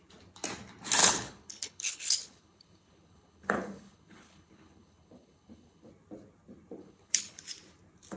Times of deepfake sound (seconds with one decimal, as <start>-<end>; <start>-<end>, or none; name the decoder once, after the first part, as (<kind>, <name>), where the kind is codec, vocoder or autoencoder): 1.0-5.9 (codec, HILCodec); 6.8-7.4